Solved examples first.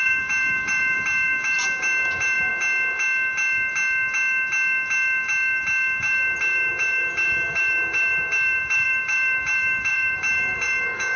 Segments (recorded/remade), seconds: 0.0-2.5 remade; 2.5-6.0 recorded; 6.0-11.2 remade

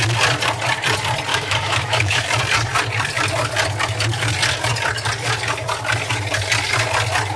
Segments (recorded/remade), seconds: 0.0-1.3 recorded; 1.3-2.2 remade; 2.2-7.4 recorded

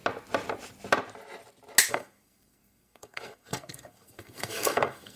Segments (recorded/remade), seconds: 0.0-1.9 recorded; 1.9-5.2 remade

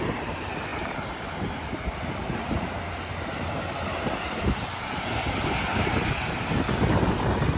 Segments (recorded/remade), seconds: 0.0-7.6 recorded

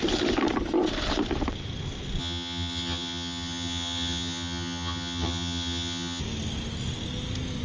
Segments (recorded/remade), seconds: 0.0-2.2 recorded; 2.2-6.2 remade; 6.2-7.6 recorded

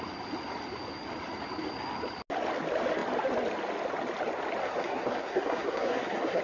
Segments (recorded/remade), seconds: 0.0-4.6 recorded; 4.6-6.4 remade

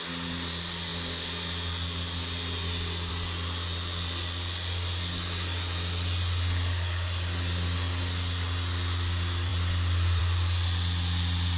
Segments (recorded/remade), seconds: 0.0-11.6 recorded